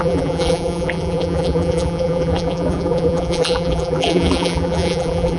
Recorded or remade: remade